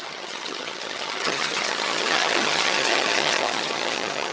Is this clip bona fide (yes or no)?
no